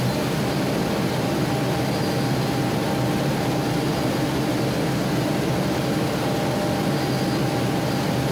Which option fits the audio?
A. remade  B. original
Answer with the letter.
B